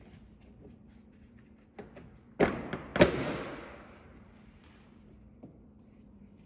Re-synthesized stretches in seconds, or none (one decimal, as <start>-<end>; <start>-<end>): none